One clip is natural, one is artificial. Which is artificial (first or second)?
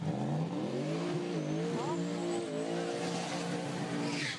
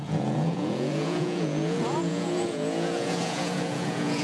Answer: second